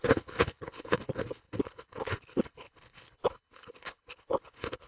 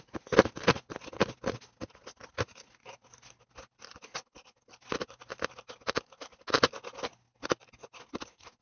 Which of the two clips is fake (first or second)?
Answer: first